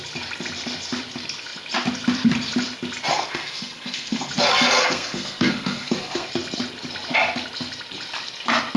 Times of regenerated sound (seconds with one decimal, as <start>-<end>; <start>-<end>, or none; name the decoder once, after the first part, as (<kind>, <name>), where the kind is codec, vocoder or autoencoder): 3.1-4.3 (codec, SNAC); 4.8-6.3